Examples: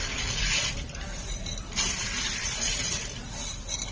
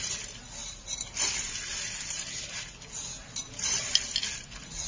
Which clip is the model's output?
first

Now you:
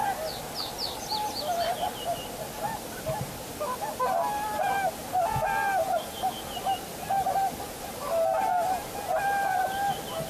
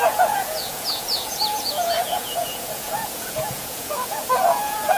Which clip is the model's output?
second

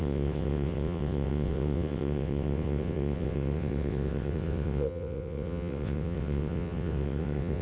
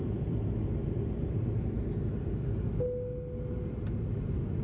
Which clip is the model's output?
first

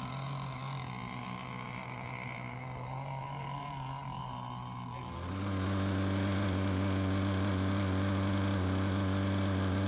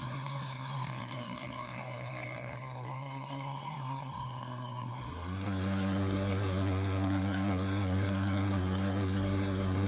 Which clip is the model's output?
second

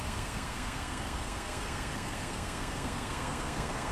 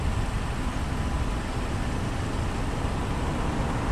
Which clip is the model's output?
first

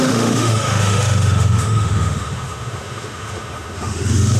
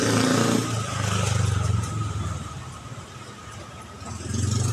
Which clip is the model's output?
first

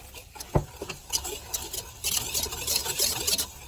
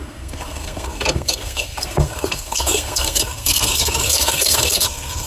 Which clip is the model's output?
second